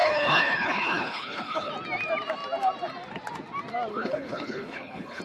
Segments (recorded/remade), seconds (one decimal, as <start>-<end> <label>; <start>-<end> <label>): 0.0-1.7 remade; 1.7-3.9 recorded; 3.9-5.2 remade